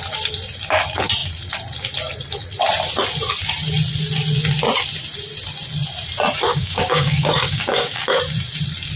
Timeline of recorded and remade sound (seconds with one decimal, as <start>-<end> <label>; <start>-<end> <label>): 0.0-6.5 recorded; 6.5-8.2 remade; 8.2-9.0 recorded